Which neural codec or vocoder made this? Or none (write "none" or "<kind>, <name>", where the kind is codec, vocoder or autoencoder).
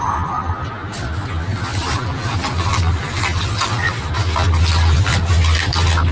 none